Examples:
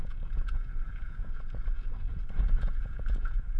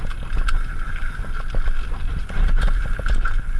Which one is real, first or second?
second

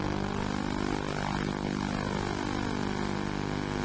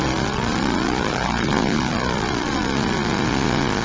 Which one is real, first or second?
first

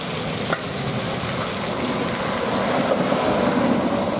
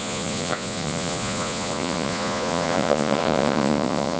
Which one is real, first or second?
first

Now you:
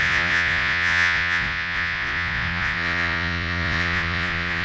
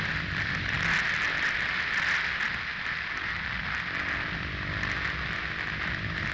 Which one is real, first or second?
second